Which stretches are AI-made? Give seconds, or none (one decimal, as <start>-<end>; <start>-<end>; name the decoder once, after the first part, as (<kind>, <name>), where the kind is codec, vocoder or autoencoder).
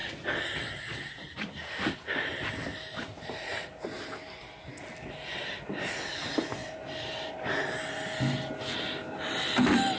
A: 3.0-3.7 (vocoder, Vocos)